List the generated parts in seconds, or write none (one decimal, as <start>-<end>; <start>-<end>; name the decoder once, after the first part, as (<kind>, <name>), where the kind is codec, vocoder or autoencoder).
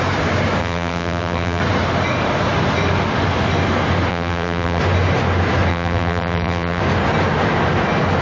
0.6-1.6 (vocoder, BigVGAN v2); 4.1-4.8; 5.7-6.8